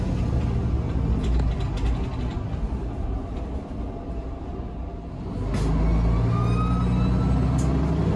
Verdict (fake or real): real